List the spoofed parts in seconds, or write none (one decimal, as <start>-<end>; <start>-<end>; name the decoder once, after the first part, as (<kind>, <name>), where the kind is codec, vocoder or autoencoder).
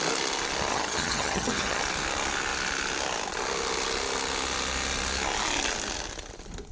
0.7-1.8 (vocoder, HiFi-GAN)